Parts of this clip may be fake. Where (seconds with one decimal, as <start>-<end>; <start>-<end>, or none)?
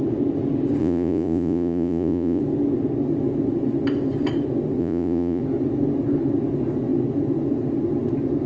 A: 0.8-2.4; 4.8-5.4